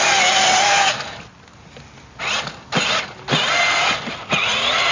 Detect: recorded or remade recorded